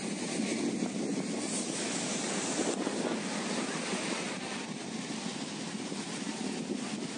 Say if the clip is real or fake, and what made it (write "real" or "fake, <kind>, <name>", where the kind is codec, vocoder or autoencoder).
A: real